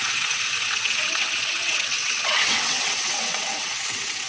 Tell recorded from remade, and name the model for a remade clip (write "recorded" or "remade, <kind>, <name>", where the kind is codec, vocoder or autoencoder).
remade, vocoder, WaveNeXt